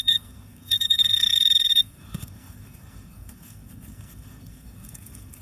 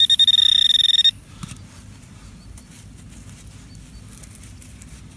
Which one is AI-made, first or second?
first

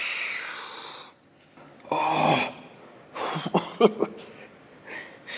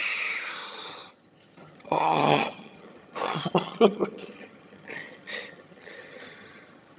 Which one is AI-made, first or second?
second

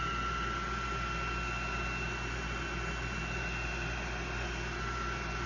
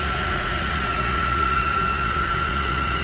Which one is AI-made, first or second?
second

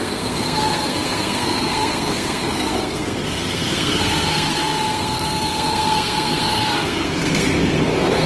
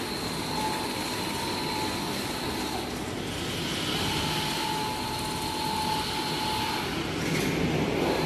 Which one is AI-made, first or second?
first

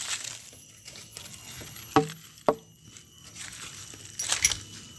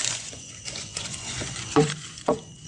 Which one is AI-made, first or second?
second